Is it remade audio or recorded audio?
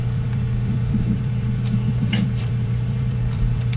remade